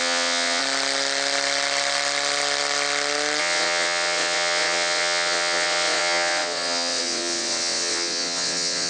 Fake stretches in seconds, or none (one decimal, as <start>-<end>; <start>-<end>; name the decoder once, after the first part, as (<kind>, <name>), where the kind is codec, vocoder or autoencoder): 0.0-0.6 (vocoder, WaveNeXt); 3.4-8.9